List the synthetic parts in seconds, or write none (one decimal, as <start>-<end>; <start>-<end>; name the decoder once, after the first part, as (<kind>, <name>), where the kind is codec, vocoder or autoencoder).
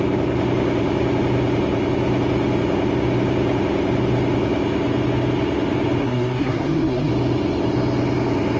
6.0-7.1 (codec, SNAC)